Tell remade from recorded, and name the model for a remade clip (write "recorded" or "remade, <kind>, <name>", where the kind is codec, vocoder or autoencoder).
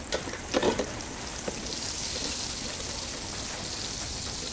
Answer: recorded